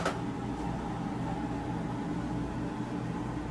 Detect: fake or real real